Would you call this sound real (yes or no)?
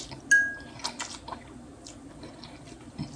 yes